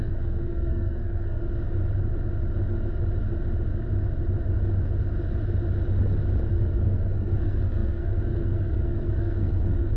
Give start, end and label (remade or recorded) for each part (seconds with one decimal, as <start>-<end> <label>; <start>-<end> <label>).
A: 0.0-1.4 remade; 1.4-6.5 recorded; 6.5-10.0 remade